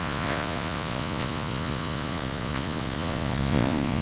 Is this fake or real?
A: fake